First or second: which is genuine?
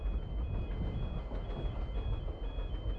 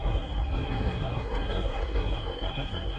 first